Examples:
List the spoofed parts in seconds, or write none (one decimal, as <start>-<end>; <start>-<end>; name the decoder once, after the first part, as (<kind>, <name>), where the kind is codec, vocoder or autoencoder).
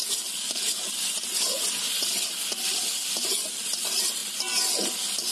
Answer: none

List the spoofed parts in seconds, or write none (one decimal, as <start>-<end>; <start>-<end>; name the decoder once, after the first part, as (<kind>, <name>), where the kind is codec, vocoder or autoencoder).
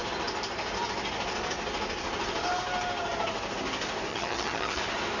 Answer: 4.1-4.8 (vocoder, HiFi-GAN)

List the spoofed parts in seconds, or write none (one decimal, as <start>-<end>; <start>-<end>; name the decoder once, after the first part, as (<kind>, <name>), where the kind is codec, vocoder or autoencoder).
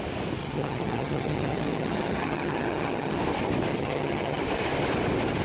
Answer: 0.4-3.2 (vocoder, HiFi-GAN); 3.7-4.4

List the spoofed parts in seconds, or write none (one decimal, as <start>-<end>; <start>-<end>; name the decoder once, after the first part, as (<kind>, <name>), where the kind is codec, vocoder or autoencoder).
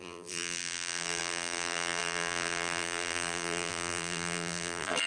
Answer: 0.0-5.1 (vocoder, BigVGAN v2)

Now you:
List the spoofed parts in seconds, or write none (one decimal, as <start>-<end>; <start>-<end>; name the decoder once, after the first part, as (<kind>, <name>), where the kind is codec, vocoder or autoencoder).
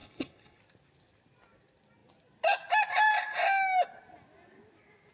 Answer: 0.0-0.6 (codec, HILCodec)